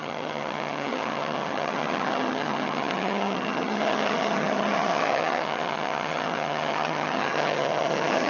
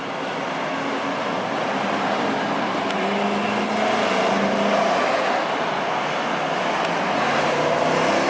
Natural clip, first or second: second